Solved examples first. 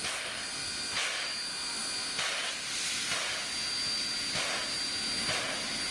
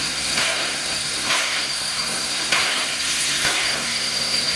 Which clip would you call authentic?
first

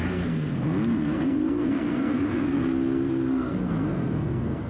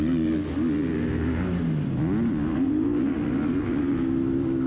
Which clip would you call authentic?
second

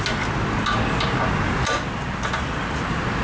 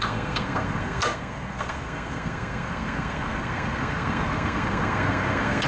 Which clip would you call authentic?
first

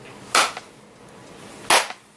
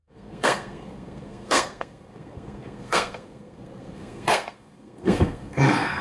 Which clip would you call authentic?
first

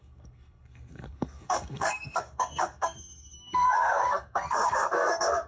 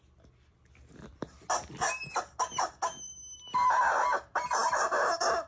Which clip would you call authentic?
second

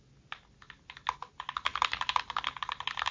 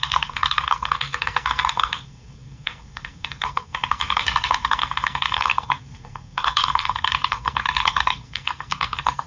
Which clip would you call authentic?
first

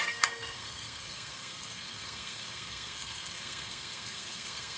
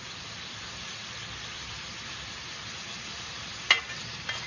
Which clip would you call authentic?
second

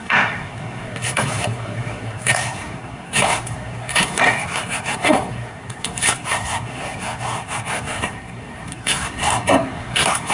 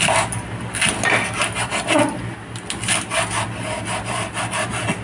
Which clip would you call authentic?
second